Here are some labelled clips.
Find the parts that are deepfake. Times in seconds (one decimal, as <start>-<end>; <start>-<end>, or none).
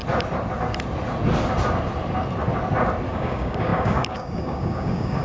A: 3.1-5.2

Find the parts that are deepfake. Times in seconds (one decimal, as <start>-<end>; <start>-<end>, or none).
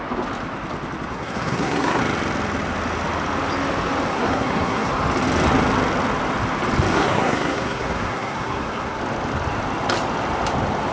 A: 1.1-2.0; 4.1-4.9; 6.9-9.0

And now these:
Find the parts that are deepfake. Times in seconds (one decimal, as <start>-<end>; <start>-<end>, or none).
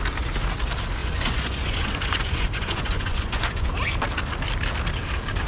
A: 1.0-3.7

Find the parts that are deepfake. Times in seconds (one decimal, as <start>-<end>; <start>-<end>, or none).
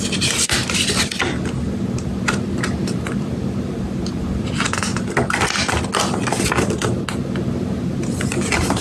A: 0.0-4.9; 7.5-8.8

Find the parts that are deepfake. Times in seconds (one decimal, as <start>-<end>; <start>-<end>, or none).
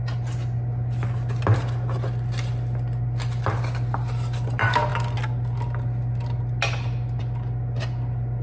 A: none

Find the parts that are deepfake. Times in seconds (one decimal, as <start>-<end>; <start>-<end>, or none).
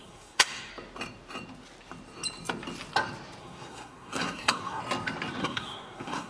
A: 0.0-0.7; 3.4-4.8; 5.4-6.3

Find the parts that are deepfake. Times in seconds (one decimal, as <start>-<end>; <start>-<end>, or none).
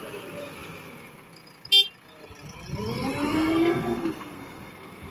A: 3.3-5.1